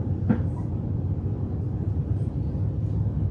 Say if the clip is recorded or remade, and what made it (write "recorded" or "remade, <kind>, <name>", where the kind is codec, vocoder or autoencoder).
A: recorded